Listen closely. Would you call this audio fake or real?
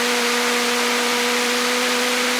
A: real